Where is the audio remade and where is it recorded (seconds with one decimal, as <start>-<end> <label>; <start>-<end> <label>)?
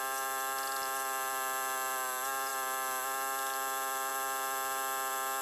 0.0-5.4 recorded